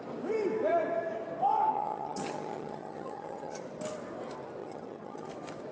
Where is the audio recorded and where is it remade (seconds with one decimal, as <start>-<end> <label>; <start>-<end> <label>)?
0.0-1.7 recorded; 1.7-3.6 remade; 3.6-4.6 recorded; 4.6-5.3 remade; 5.3-5.7 recorded